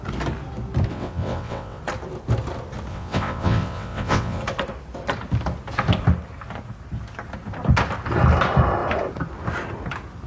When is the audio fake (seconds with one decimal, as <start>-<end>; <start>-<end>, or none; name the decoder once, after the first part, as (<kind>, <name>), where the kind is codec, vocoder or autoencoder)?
0.9-1.8 (vocoder, WaveNeXt); 2.9-4.4